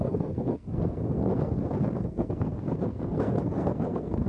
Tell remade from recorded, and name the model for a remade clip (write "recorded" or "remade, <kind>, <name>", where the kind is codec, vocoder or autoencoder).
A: remade, codec, SNAC